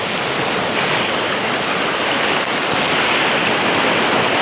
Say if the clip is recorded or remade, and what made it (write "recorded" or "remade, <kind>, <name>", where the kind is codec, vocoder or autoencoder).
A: recorded